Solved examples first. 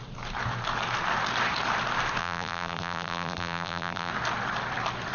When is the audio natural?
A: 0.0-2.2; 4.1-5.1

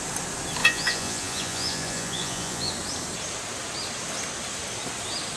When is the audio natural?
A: 0.0-0.6; 2.7-5.4